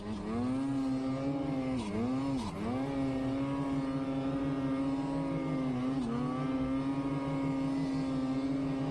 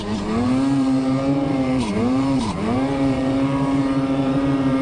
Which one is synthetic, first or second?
second